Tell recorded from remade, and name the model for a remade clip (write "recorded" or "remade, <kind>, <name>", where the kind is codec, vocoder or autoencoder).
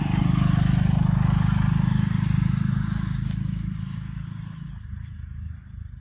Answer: recorded